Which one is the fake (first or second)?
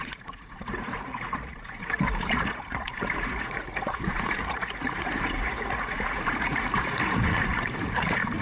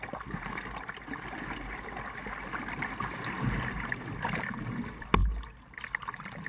first